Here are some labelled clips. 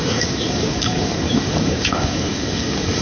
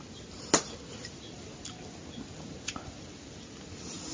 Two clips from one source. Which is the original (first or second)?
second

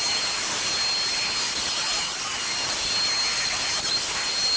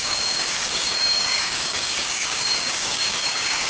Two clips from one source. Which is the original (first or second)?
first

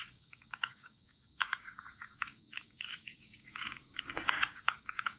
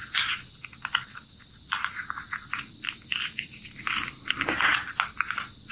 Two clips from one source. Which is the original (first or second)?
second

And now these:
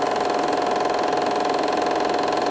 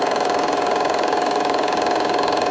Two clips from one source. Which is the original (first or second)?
first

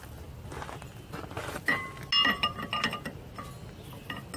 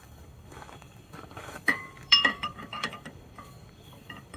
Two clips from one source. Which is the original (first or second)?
first